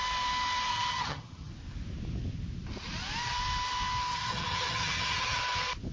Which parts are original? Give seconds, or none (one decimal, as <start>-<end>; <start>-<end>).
0.0-0.7; 1.5-4.1; 5.4-5.9